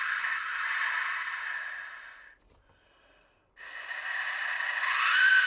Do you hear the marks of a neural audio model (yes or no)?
no